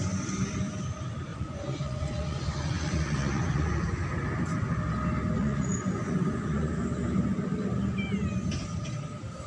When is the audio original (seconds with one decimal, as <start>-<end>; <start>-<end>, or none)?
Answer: 0.0-1.3; 3.8-5.4; 6.7-9.5